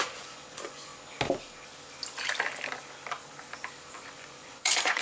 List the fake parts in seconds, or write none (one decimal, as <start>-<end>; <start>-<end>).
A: 0.0-0.9; 3.9-5.0